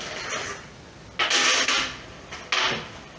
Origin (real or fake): real